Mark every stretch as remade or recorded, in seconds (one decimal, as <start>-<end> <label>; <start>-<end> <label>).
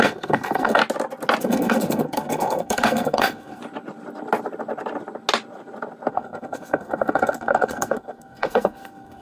0.0-0.8 remade; 0.8-1.4 recorded; 1.4-3.6 remade; 3.6-6.1 recorded; 6.1-9.2 remade